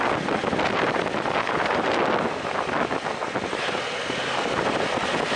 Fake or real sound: real